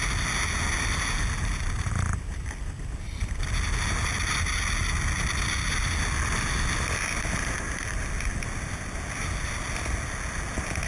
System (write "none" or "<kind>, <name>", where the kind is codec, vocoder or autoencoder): none